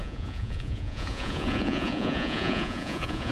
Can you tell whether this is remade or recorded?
remade